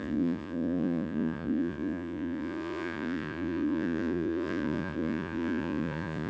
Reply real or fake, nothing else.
fake